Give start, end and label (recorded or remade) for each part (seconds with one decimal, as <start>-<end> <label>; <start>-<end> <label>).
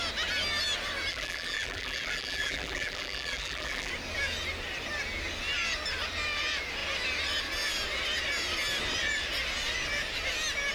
0.0-1.1 recorded; 1.1-3.9 remade; 3.9-10.7 recorded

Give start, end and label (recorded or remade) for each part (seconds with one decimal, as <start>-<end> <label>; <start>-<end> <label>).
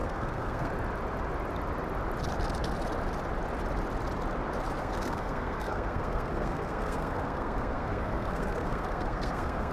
0.0-0.7 remade; 0.7-4.8 recorded; 4.8-9.7 remade